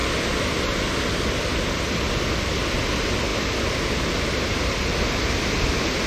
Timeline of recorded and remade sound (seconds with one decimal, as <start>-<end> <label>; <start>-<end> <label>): 0.0-6.1 recorded